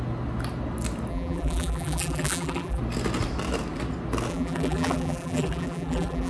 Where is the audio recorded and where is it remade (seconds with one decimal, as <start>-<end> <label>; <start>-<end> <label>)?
0.0-1.1 recorded; 1.1-2.8 remade; 2.8-4.3 recorded; 4.3-6.3 remade